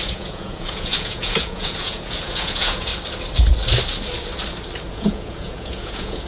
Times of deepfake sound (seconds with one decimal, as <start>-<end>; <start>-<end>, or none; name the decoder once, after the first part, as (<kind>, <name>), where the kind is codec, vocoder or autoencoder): 0.0-2.9 (vocoder, Vocos); 4.9-6.3